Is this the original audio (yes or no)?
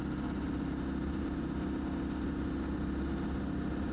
yes